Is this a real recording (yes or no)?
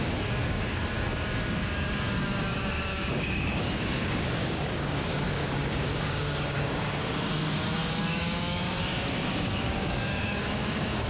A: no